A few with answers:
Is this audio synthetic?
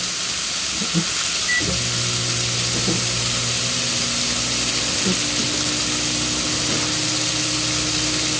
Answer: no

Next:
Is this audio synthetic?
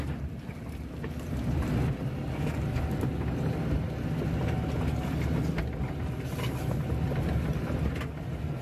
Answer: no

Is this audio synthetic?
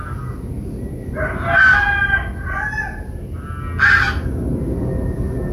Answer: no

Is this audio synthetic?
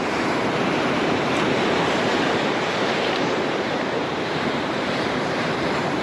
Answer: yes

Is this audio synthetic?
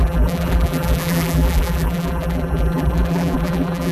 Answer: yes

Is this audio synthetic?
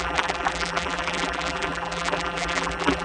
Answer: yes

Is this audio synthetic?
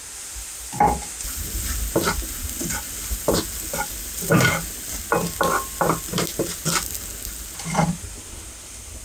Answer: no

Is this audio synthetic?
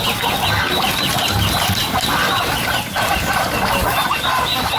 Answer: no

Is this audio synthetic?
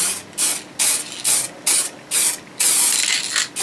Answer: no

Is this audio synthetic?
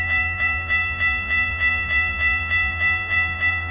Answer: yes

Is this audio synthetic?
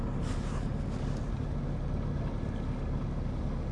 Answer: no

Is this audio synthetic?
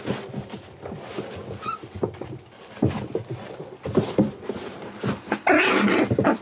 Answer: yes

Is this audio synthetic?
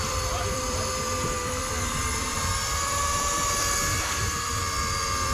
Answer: yes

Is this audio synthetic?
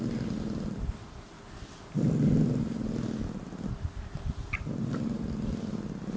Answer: no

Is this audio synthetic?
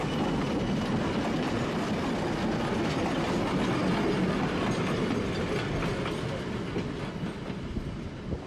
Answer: no